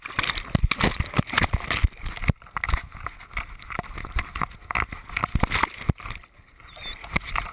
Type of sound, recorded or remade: recorded